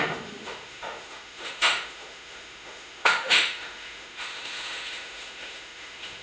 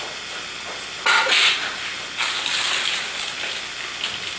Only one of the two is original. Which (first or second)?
second